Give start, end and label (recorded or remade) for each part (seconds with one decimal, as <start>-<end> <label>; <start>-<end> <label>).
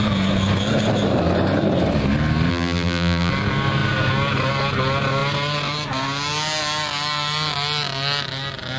0.0-2.5 recorded; 2.5-3.3 remade; 3.3-8.8 recorded